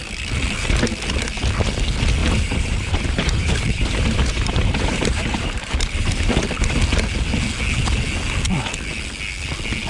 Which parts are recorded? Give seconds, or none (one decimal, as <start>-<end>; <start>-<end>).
0.0-2.2; 6.3-9.9